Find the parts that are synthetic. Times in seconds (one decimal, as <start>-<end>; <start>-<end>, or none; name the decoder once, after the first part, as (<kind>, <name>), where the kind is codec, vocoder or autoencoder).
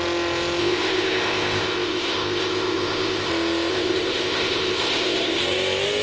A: 0.6-3.3 (codec, ZipCodec); 3.7-5.4